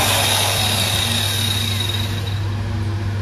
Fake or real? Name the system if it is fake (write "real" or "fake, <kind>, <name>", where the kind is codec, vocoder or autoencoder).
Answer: real